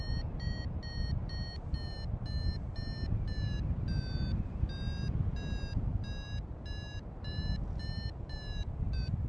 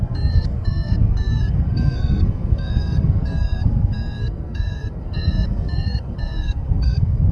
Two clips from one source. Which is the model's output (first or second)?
second